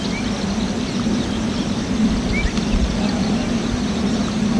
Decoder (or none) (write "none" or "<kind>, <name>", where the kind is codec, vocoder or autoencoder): none